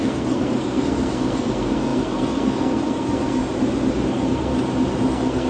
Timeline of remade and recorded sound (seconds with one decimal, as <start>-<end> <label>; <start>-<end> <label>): 0.0-3.4 remade; 3.4-4.1 recorded; 4.1-4.5 remade; 4.5-5.1 recorded; 5.1-5.5 remade